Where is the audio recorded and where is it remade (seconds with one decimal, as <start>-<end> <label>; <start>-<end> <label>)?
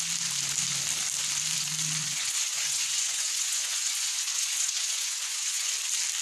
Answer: 0.0-2.0 recorded; 2.0-5.7 remade; 5.7-6.2 recorded